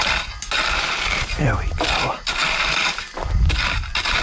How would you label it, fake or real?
real